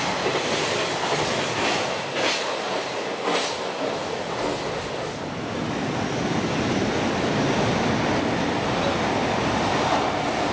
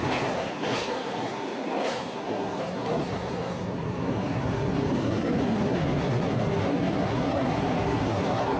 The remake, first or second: second